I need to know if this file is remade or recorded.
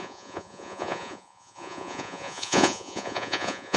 remade